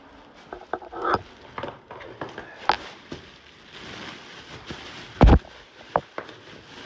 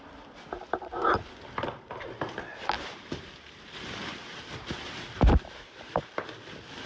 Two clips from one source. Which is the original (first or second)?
first